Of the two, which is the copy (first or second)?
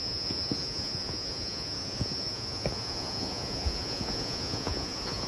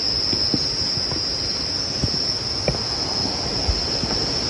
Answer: first